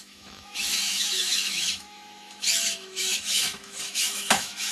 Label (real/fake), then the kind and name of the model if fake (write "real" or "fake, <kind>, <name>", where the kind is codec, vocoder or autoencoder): fake, autoencoder, DAC-VAE